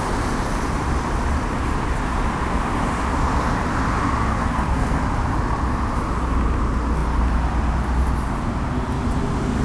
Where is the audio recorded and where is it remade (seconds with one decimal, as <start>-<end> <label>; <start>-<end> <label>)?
0.0-4.3 recorded; 4.3-5.0 remade; 5.0-9.6 recorded